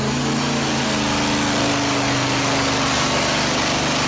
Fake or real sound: real